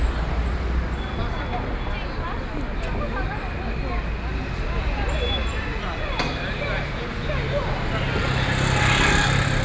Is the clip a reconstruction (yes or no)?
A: no